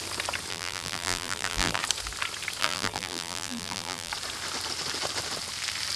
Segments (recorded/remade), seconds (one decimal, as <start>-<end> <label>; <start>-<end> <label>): 0.0-0.5 recorded; 0.5-1.8 remade; 1.8-2.6 recorded; 2.6-4.1 remade; 4.1-6.0 recorded